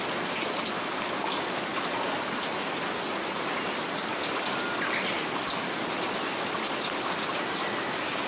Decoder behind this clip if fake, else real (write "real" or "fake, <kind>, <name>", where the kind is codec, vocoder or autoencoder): real